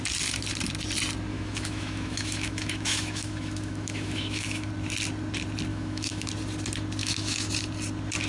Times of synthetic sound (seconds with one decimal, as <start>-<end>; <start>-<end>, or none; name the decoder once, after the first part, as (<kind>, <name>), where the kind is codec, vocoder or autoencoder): 1.3-4.7 (autoencoder, DAC-VAE); 5.7-6.3; 7.0-7.5